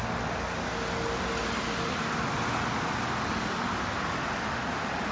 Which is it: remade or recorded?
recorded